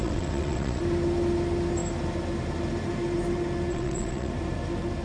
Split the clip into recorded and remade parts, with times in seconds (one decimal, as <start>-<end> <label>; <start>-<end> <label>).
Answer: 0.0-0.8 remade; 0.8-3.7 recorded; 3.7-4.3 remade; 4.3-5.0 recorded